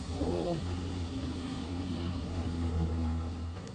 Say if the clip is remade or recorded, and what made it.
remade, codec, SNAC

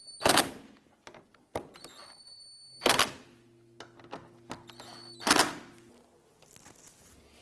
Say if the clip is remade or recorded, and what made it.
recorded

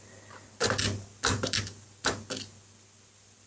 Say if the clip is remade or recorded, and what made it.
recorded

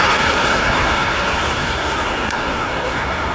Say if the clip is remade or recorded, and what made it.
remade, codec, SNAC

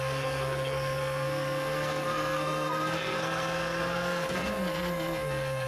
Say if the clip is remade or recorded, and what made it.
remade, codec, SNAC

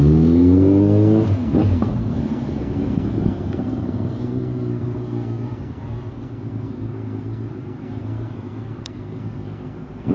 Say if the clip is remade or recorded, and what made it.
remade, codec, SNAC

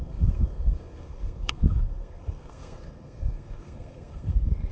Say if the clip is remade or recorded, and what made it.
remade, codec, SNAC